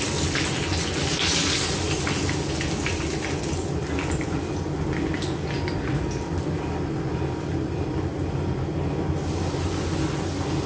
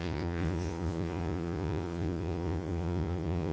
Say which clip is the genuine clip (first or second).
first